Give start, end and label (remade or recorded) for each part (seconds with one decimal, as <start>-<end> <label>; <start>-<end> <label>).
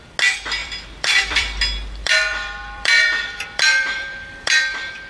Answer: 0.0-0.6 recorded; 0.6-1.6 remade; 1.6-2.0 recorded; 2.0-5.1 remade